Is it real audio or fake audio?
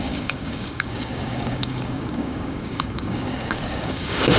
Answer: fake